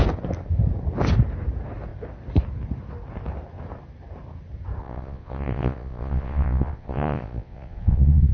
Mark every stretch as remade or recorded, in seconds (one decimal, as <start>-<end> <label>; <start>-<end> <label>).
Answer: 0.0-4.8 recorded; 4.8-8.3 remade